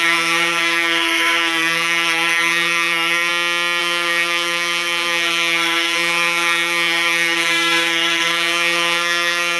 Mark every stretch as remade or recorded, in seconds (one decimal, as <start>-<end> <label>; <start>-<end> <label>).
0.0-3.3 remade; 3.3-3.8 recorded; 3.8-9.6 remade